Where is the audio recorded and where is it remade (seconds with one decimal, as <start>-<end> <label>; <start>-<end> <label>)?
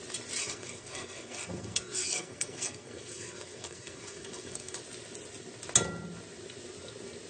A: 0.0-0.4 recorded; 0.4-4.8 remade; 4.8-7.3 recorded